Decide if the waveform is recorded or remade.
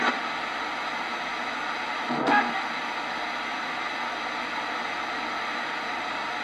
recorded